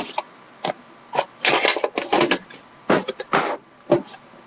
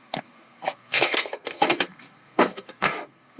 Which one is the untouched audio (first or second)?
first